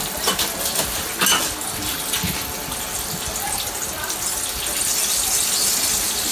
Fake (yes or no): no